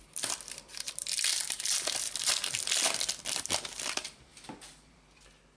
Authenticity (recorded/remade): remade